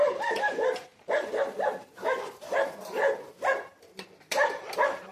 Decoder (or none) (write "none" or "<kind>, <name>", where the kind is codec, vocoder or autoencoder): vocoder, BigVGAN v2